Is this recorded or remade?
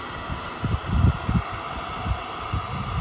recorded